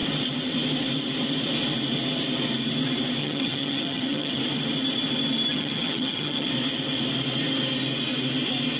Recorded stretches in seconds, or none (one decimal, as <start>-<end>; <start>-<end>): 0.0-3.2; 4.4-5.5; 6.5-8.8